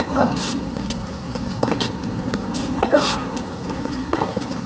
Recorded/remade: remade